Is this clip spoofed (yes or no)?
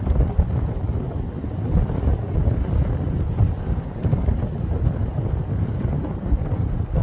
no